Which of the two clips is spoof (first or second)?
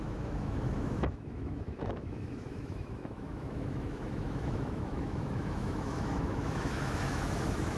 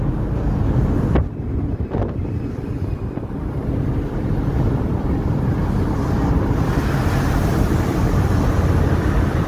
first